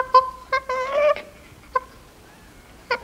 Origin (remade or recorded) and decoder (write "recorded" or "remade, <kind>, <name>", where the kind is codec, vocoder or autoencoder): recorded